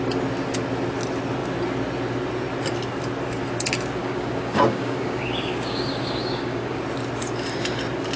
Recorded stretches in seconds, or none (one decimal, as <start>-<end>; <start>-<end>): 0.0-4.0; 6.8-8.2